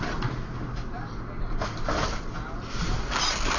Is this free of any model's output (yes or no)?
yes